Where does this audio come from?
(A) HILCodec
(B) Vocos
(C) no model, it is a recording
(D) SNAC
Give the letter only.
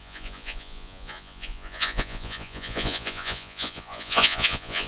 B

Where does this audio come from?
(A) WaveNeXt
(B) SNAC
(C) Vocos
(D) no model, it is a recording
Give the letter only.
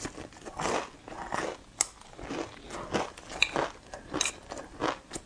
D